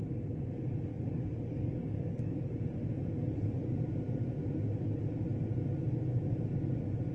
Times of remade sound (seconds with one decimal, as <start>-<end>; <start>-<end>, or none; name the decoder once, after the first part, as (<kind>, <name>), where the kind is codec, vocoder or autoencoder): 0.9-2.5 (codec, DAC)